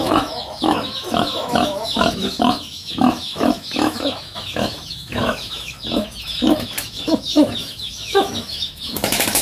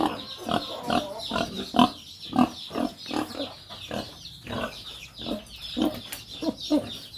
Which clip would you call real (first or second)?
second